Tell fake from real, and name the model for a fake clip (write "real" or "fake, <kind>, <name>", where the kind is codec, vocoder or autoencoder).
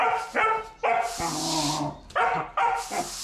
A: real